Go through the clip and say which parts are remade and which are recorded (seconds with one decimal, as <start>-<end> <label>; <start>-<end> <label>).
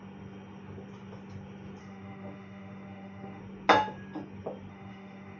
0.0-1.8 recorded; 1.8-3.4 remade; 3.4-4.7 recorded; 4.7-5.4 remade